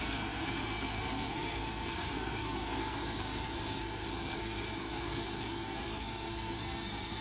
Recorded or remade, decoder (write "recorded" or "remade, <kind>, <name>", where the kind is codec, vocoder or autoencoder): remade, codec, SNAC